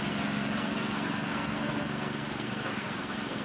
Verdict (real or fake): fake